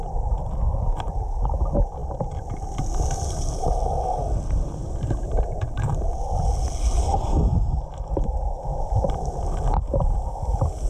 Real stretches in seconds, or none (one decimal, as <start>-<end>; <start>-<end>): 0.0-7.0; 7.8-10.9